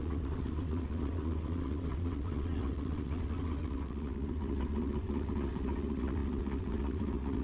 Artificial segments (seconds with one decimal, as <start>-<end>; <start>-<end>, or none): 0.0-7.4

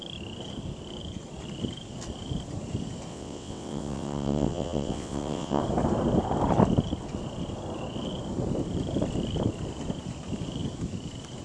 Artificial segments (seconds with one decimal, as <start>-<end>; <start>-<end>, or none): 3.1-5.6